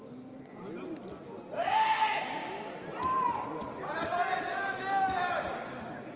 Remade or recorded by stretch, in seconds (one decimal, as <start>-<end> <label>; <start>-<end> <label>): 0.0-1.6 recorded; 1.6-2.5 remade; 2.5-4.5 recorded; 4.5-6.2 remade